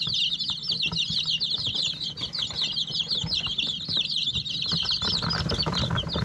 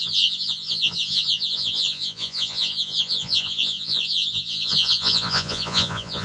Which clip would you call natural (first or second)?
first